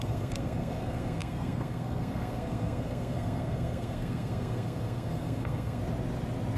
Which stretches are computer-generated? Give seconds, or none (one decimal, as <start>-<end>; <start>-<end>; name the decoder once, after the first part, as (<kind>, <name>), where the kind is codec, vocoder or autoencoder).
0.0-5.8 (codec, SNAC)